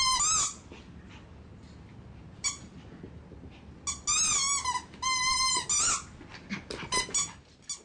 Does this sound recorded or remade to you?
recorded